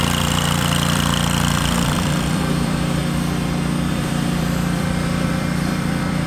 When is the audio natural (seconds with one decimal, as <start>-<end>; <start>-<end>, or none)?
3.0-3.9